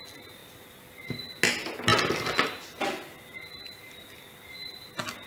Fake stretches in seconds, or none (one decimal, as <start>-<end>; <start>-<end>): 0.4-0.9